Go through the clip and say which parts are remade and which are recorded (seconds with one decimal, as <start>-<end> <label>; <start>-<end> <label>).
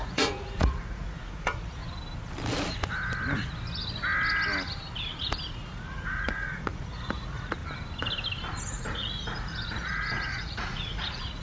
0.0-1.8 remade; 1.8-5.5 recorded; 5.5-7.6 remade; 7.6-8.6 recorded; 8.6-11.4 remade